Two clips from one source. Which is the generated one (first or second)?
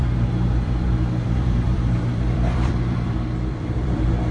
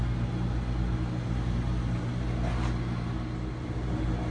first